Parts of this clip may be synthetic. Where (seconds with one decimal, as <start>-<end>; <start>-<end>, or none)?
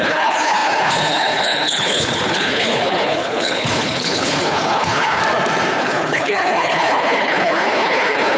0.0-5.2; 5.8-8.4